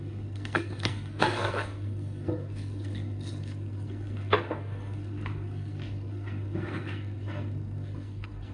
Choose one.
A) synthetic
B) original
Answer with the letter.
A